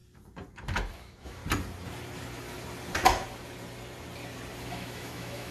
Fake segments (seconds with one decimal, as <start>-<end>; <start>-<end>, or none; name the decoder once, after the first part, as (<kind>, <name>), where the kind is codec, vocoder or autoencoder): 0.9-1.4 (autoencoder, DAC-VAE); 4.7-5.5